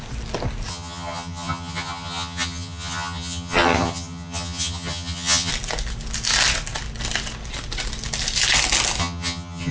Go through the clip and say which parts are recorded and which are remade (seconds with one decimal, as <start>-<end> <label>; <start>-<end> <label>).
0.0-0.7 recorded; 0.7-5.5 remade; 5.5-9.0 recorded; 9.0-9.7 remade